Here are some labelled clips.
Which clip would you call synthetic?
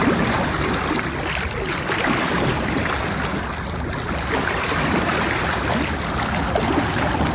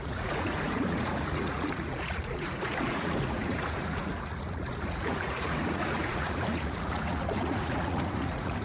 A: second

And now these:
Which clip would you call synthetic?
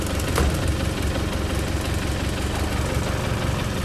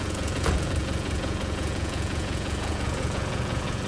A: second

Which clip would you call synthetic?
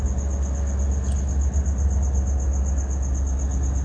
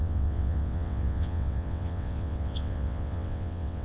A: second